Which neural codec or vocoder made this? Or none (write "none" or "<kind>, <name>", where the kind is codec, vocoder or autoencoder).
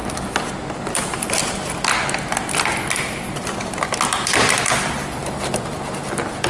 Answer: none